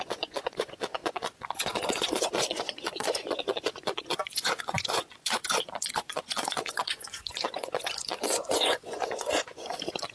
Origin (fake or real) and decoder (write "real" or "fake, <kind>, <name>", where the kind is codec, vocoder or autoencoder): fake, vocoder, Vocos